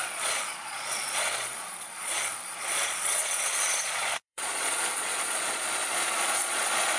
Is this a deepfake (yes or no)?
yes